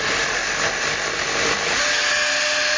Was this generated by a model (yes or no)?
no